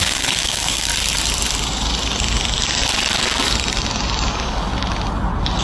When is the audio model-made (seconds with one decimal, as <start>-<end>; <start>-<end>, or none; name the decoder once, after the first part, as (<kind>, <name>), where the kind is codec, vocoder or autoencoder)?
0.0-0.9 (codec, DAC); 4.3-4.7